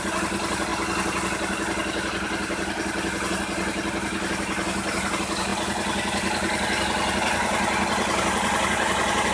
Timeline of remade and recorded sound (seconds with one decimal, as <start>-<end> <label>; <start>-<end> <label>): 0.0-9.3 recorded